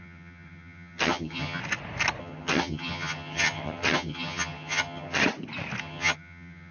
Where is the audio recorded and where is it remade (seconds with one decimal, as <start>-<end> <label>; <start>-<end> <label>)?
0.0-1.6 remade; 1.6-2.2 recorded; 2.2-5.2 remade; 5.2-5.8 recorded; 5.8-6.7 remade